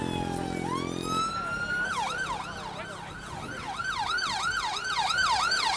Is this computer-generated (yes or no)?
no